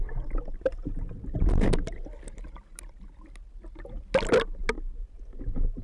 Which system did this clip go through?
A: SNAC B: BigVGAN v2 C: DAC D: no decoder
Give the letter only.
D